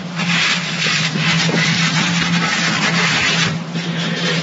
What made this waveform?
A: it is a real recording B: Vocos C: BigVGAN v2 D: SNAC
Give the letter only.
C